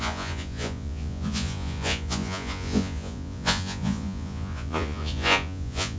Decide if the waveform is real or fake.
fake